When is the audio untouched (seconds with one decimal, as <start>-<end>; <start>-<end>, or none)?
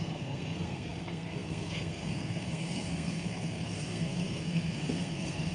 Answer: none